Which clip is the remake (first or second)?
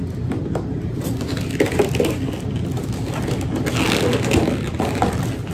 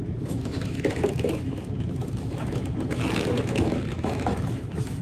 second